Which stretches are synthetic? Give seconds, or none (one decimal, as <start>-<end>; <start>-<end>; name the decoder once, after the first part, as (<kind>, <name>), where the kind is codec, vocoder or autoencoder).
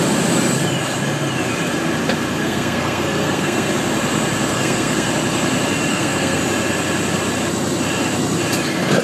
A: 2.4-3.7 (codec, SNAC); 4.5-5.1; 5.9-6.4